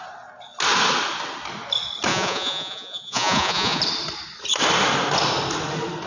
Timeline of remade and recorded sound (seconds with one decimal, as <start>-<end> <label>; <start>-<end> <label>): 0.0-2.1 recorded; 2.1-3.8 remade; 3.8-6.1 recorded